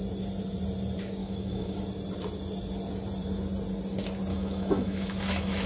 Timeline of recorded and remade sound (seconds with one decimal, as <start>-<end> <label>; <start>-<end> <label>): 0.0-1.2 recorded; 1.2-1.8 remade; 1.8-4.3 recorded; 4.3-5.7 remade